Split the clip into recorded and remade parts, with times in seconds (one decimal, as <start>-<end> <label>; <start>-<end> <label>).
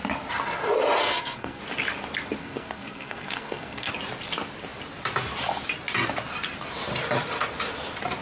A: 0.0-1.0 recorded; 1.0-1.6 remade; 1.6-2.4 recorded; 2.4-3.9 remade; 3.9-8.2 recorded